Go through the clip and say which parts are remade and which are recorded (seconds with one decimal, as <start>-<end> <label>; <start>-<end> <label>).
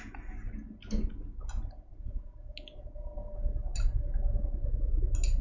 0.0-5.4 recorded